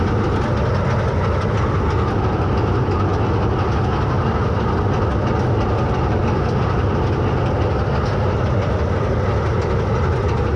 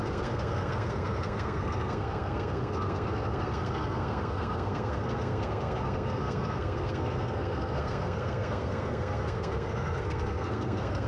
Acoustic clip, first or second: first